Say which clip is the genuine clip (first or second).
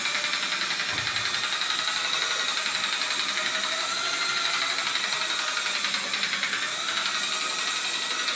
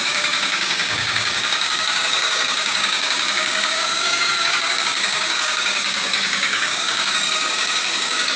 first